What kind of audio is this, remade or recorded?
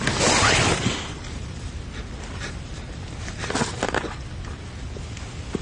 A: recorded